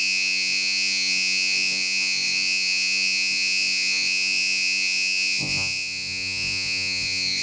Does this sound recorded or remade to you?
remade